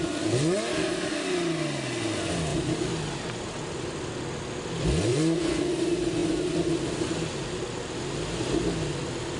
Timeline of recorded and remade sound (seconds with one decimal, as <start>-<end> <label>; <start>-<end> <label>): 0.0-5.1 recorded; 5.1-5.6 remade; 5.6-9.4 recorded